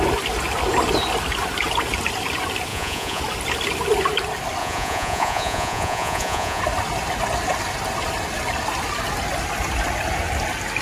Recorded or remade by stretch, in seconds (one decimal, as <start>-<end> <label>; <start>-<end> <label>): 0.0-2.7 recorded; 2.7-3.2 remade; 3.2-4.6 recorded; 4.6-6.6 remade; 6.6-10.8 recorded